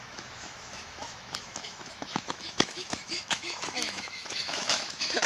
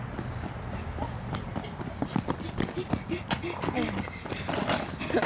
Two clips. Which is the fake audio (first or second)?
first